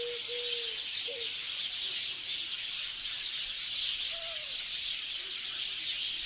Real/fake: real